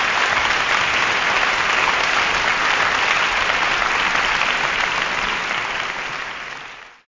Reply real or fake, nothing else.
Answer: real